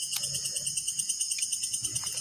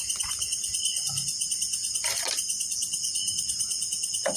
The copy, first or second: first